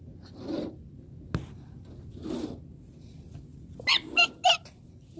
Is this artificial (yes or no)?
no